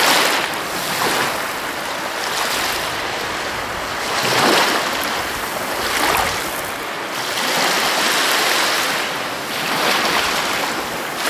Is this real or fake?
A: real